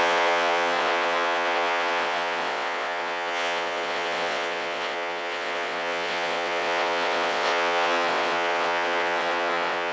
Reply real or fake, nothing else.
fake